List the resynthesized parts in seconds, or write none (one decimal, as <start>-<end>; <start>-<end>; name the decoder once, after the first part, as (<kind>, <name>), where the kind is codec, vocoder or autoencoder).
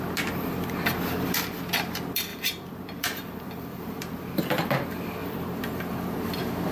2.3-4.4 (vocoder, BigVGAN v2)